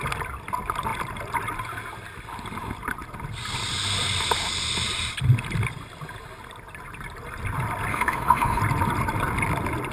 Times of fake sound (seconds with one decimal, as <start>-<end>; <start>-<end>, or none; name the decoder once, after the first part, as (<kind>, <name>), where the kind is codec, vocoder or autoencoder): 7.9-8.6 (autoencoder, DAC-VAE)